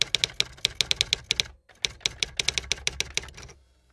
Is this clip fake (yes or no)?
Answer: no